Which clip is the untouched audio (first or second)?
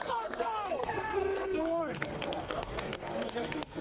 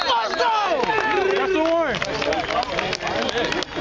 second